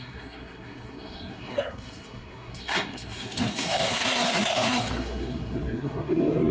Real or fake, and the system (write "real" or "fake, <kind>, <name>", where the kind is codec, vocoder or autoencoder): fake, codec, SNAC